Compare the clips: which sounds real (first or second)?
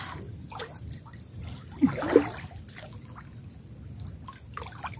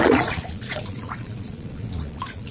first